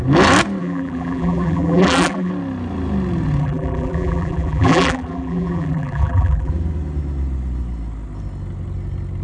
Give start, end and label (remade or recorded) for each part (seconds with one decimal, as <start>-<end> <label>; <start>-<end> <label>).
0.0-0.6 recorded; 0.6-2.3 remade; 2.3-3.4 recorded; 3.4-6.5 remade; 6.5-9.2 recorded